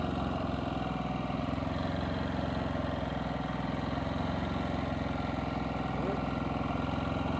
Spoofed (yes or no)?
no